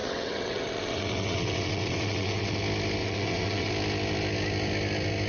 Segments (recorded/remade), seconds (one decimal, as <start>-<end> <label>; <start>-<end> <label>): 0.0-2.6 remade; 2.6-3.0 recorded; 3.0-3.7 remade; 3.7-5.3 recorded